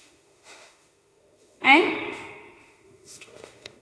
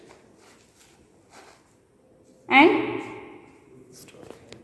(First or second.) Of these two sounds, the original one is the second